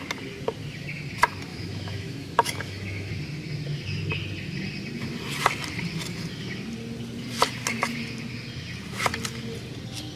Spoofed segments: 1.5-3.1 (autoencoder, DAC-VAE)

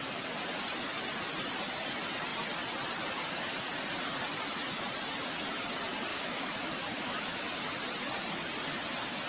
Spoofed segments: 6.1-7.6 (autoencoder, DAC-VAE)

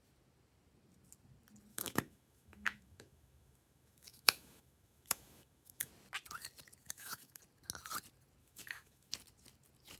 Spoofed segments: 1.7-5.9 (autoencoder, DAC-VAE); 6.8-7.4; 8.4-9.1

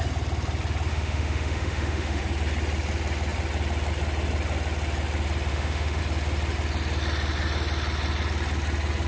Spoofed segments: 0.9-2.2 (autoencoder, DAC-VAE); 5.5-6.0